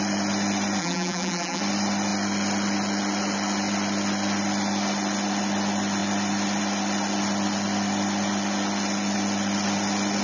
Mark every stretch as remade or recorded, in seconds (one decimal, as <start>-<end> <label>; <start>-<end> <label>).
0.0-0.8 recorded; 0.8-1.6 remade; 1.6-10.2 recorded